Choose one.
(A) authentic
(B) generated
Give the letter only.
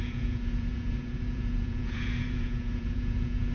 B